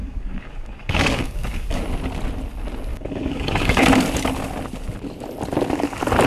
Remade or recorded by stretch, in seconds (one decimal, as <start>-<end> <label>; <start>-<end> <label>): 0.0-1.8 remade; 1.8-2.9 recorded; 2.9-3.8 remade; 3.8-6.3 recorded